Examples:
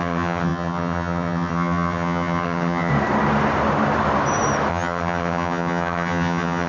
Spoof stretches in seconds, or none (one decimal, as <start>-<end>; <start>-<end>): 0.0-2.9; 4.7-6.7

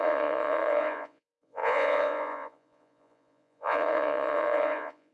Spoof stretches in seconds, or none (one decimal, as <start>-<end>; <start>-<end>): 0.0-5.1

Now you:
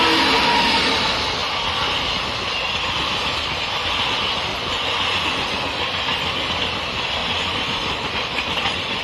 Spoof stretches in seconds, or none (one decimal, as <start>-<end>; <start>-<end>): 4.5-5.8; 7.2-9.0